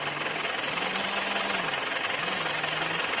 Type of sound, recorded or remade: recorded